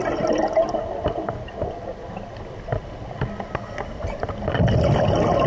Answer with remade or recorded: recorded